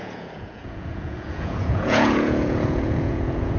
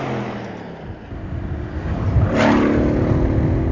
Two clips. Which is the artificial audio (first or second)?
first